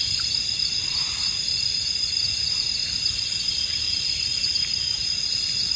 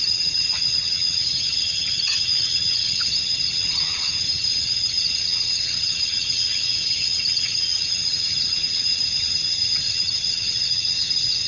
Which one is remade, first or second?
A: second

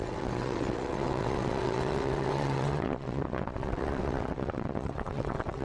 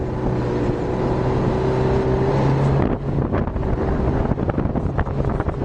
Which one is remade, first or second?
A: first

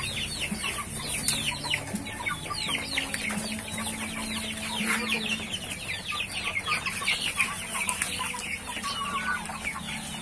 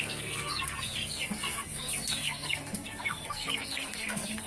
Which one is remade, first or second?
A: second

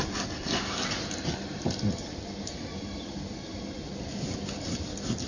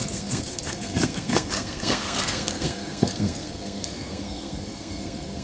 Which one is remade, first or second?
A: second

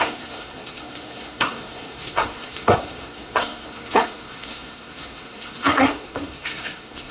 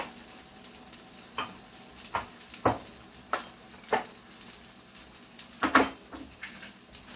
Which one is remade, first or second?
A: first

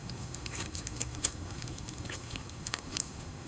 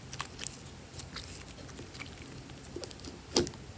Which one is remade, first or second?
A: first